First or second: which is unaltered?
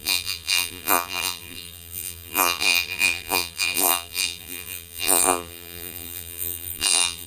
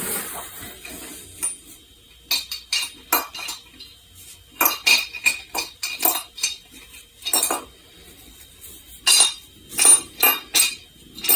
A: second